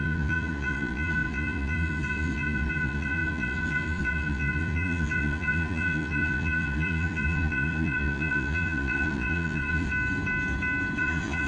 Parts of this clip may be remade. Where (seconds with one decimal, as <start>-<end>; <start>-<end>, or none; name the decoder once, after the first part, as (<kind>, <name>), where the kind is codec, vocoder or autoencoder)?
0.0-9.9 (vocoder, Vocos); 11.0-11.5